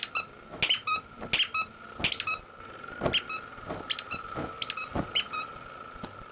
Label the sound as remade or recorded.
recorded